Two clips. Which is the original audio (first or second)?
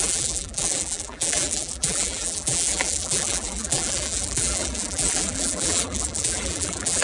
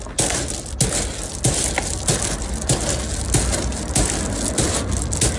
second